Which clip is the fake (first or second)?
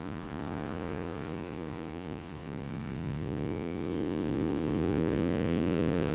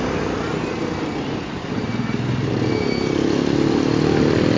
first